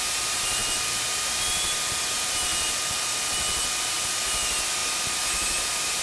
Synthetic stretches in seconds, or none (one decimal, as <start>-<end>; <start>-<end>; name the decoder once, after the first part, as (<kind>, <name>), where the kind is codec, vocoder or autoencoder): 0.0-0.6 (vocoder, BigVGAN v2); 2.0-2.5; 3.8-6.0